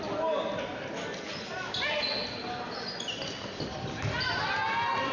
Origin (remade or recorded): recorded